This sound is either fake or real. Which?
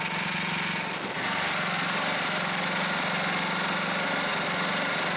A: real